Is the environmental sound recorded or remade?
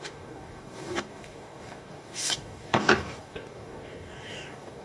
remade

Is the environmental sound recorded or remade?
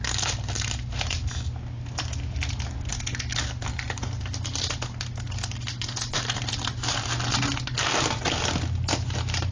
recorded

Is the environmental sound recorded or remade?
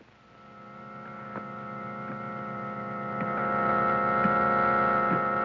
recorded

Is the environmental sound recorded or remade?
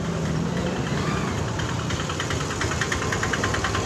recorded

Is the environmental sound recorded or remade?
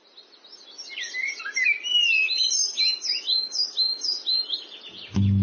recorded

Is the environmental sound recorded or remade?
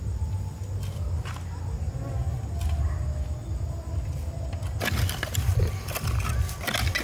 recorded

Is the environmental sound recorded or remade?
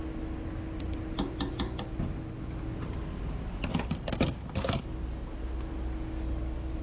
recorded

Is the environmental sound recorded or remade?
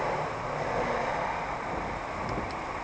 recorded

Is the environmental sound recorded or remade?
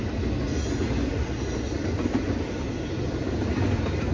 recorded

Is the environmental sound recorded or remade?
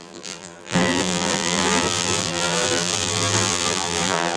remade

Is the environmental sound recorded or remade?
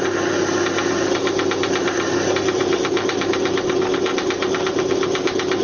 recorded